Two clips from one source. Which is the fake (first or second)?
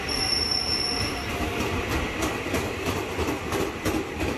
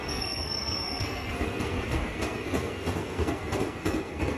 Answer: second